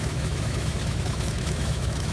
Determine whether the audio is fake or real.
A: fake